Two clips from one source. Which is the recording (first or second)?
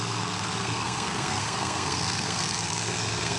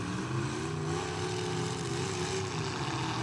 second